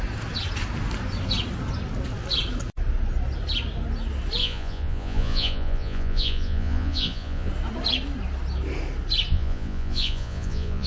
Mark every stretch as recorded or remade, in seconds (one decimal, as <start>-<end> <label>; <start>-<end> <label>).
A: 0.0-4.4 recorded; 4.4-7.5 remade; 7.5-9.3 recorded; 9.3-10.9 remade